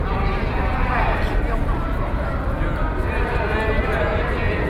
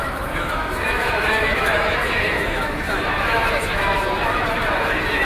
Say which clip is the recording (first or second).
first